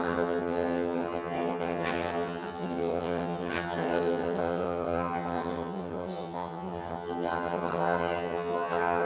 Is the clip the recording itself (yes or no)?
no